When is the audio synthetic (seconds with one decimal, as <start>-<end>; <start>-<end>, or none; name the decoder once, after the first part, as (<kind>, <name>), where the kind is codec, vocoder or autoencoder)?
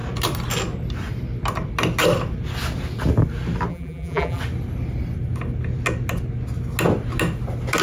3.7-4.4 (vocoder, BigVGAN v2)